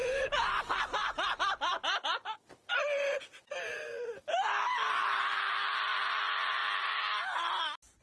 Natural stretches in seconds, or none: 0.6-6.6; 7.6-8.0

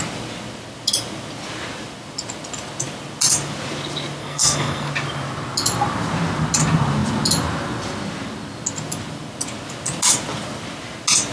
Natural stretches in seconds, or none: 0.0-4.2; 4.9-11.3

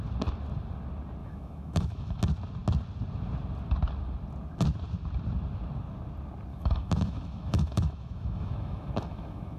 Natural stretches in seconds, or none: 0.0-1.2; 2.2-6.5